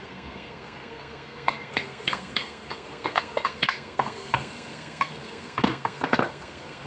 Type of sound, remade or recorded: remade